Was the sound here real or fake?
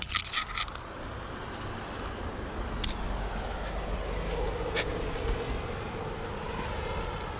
real